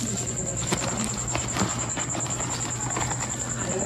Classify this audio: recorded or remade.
recorded